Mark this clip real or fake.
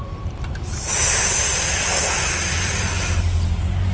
real